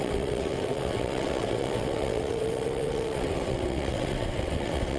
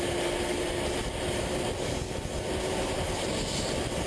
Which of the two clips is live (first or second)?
second